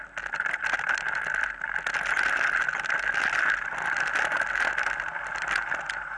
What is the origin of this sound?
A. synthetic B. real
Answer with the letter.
B